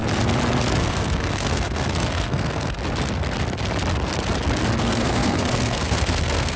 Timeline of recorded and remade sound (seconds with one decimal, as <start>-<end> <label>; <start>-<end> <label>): 0.0-0.8 recorded; 0.8-2.8 remade; 2.8-4.8 recorded; 4.8-6.6 remade

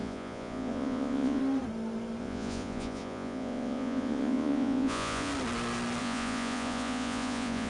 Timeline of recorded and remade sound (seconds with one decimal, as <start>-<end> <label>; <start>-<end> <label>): 0.0-1.4 remade; 1.4-2.2 recorded; 2.2-5.3 remade; 5.3-6.0 recorded; 6.0-7.7 remade